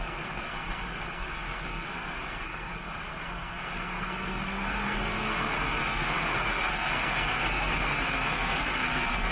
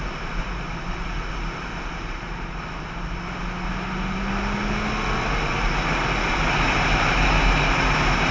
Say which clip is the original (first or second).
second